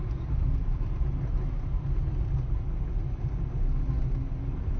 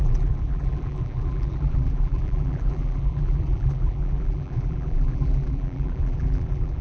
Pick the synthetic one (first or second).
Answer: second